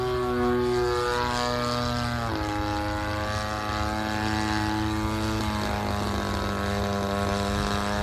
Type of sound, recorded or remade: recorded